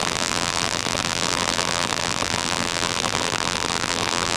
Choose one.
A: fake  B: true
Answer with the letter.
A